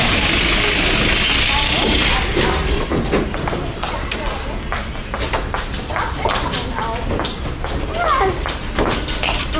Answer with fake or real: real